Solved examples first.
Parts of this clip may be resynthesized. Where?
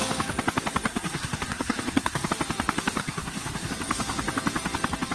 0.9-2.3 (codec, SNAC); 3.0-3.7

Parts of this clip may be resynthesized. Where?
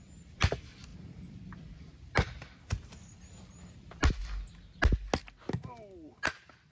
none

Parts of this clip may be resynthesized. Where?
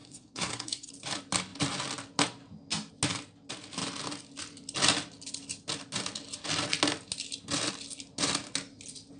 0.0-0.9 (codec, SNAC)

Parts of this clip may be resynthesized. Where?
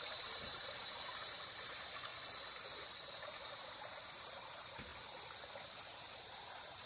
0.0-2.1 (vocoder, BigVGAN v2); 3.6-4.9; 5.6-6.9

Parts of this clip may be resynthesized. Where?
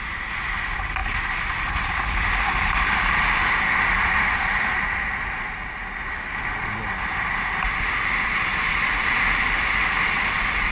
none